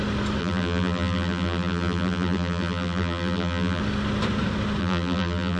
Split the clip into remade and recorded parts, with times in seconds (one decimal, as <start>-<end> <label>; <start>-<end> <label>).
0.0-0.4 recorded; 0.4-3.8 remade; 3.8-4.8 recorded; 4.8-5.6 remade